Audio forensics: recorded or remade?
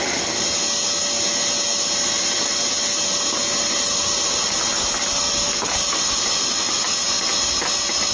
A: recorded